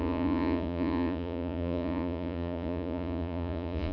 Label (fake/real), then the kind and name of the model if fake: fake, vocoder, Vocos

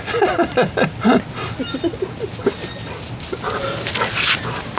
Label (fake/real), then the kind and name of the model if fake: real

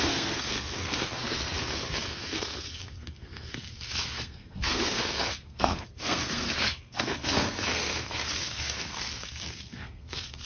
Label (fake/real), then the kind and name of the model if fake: fake, codec, SNAC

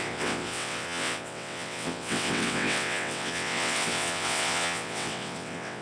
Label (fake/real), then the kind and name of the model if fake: fake, vocoder, WaveNeXt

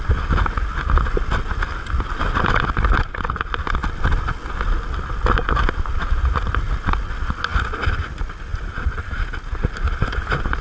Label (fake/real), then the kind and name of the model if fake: real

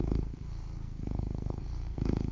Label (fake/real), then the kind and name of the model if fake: fake, codec, SNAC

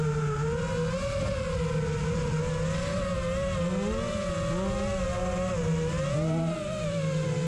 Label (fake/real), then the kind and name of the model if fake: real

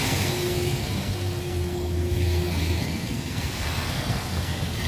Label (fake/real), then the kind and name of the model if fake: fake, codec, SNAC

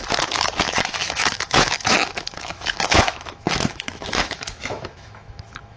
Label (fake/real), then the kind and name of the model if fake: fake, autoencoder, DAC-VAE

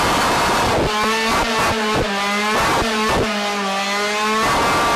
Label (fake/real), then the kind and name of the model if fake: real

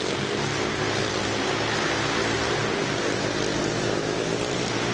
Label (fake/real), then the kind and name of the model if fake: real